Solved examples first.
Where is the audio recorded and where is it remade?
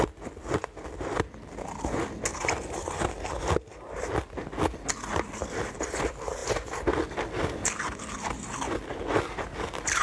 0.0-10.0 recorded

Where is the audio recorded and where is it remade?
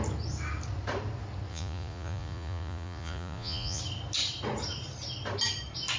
0.0-1.5 recorded; 1.5-3.8 remade; 3.8-6.0 recorded